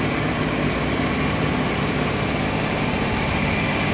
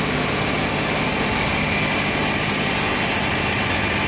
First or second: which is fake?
first